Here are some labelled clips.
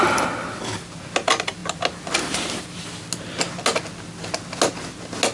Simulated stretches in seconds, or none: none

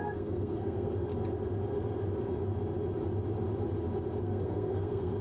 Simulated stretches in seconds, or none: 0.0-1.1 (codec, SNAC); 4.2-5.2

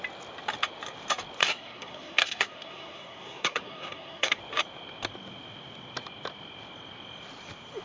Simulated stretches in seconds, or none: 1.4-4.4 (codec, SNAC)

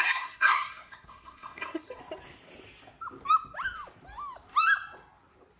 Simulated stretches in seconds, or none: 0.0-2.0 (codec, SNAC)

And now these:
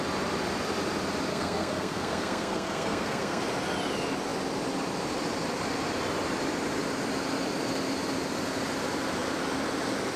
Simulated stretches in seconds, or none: 1.3-3.4 (codec, SNAC)

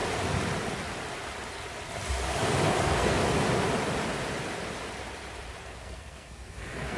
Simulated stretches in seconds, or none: 2.8-3.2 (codec, SNAC); 5.6-7.0

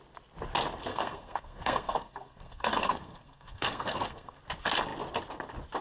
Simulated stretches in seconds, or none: 0.9-4.4 (codec, SNAC)